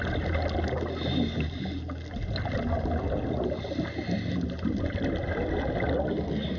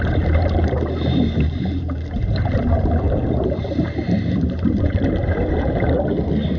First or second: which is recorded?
first